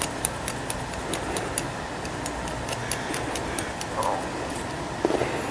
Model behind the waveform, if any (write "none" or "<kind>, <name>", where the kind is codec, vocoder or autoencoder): none